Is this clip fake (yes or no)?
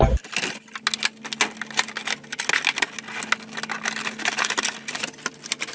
no